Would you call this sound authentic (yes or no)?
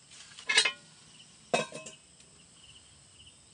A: yes